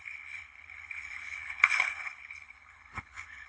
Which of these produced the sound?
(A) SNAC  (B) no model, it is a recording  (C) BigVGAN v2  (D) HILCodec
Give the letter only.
D